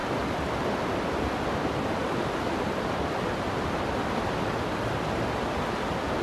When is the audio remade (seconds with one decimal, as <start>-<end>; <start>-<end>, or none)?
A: 2.0-5.2